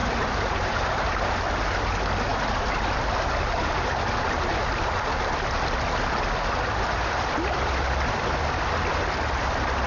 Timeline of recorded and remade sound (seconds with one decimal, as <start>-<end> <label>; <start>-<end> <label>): 0.0-1.8 remade; 1.8-9.9 recorded